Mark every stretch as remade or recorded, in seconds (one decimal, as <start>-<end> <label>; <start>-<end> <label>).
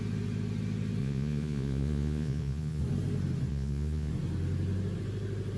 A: 0.0-1.0 recorded; 1.0-2.8 remade; 2.8-3.5 recorded; 3.5-4.1 remade; 4.1-5.6 recorded